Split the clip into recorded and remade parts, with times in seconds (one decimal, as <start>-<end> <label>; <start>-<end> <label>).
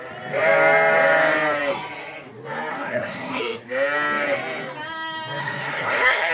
0.0-2.7 recorded; 2.7-3.4 remade; 3.4-5.4 recorded; 5.4-6.3 remade